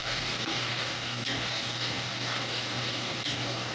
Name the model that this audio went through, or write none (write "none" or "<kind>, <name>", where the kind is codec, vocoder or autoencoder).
codec, DAC